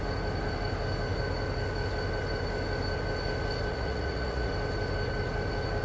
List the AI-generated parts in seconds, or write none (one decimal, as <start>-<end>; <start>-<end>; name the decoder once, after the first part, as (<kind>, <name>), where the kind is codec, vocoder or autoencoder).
3.7-4.5 (vocoder, Vocos)